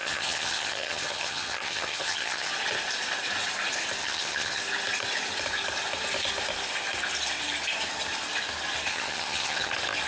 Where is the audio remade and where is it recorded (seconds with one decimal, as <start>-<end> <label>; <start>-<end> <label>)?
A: 0.0-2.5 remade; 2.5-4.0 recorded; 4.0-4.6 remade; 4.6-8.9 recorded; 8.9-9.7 remade; 9.7-10.1 recorded